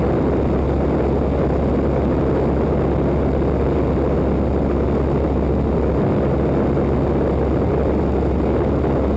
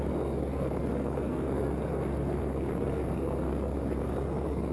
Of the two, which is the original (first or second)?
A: first